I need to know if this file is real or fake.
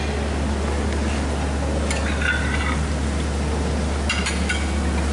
real